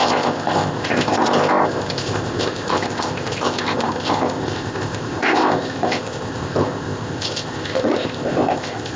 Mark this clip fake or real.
fake